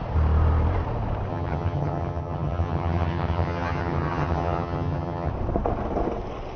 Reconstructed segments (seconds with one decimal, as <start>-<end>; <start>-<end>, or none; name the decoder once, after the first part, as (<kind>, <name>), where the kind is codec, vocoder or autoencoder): 1.3-5.3 (vocoder, HiFi-GAN)